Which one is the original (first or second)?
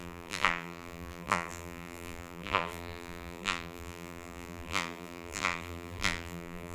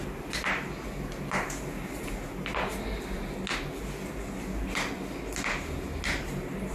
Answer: second